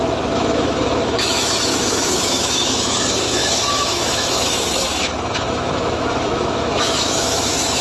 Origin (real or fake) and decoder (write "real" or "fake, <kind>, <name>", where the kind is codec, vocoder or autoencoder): fake, autoencoder, DAC-VAE